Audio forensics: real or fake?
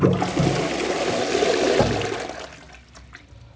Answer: real